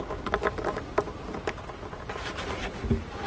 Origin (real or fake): real